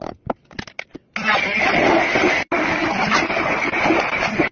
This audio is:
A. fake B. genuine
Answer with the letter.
B